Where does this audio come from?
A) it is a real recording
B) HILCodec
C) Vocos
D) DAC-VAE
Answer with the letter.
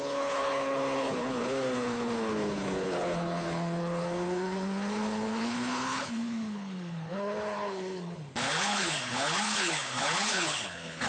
B